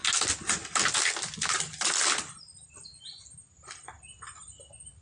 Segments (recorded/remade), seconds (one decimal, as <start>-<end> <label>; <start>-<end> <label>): 0.0-5.0 recorded